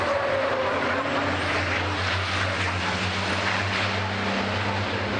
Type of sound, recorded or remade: recorded